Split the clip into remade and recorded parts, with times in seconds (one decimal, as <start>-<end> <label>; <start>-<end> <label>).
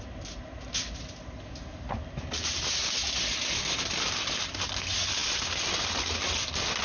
0.0-6.8 recorded